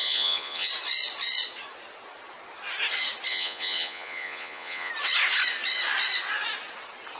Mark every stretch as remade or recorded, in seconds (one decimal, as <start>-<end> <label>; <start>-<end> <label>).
0.0-0.7 remade; 0.7-3.3 recorded; 3.3-4.9 remade; 4.9-7.2 recorded